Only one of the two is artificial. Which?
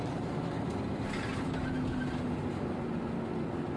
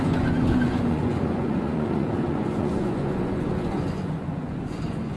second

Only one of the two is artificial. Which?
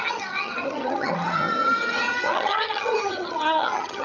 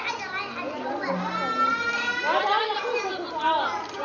first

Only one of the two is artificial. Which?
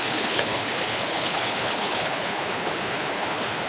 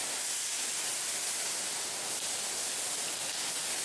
first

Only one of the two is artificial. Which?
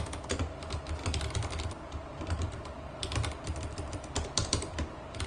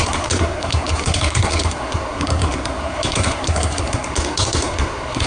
second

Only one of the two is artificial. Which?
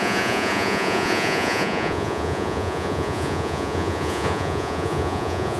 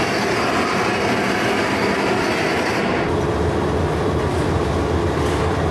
first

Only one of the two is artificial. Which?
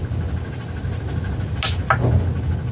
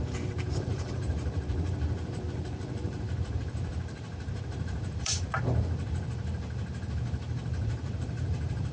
second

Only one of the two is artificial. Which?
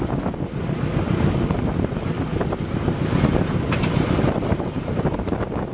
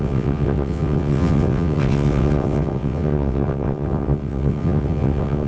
second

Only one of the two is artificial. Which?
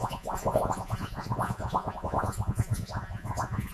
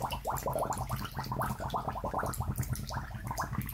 first